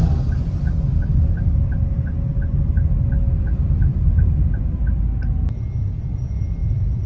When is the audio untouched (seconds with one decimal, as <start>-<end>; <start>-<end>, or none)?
0.0-3.9; 4.6-6.6